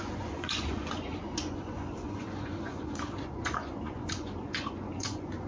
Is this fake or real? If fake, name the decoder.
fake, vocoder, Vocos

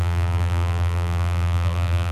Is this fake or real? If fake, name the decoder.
fake, vocoder, BigVGAN v2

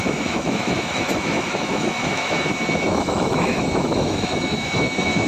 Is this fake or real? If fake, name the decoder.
fake, autoencoder, DAC-VAE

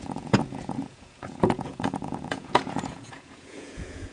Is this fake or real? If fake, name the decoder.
fake, vocoder, Vocos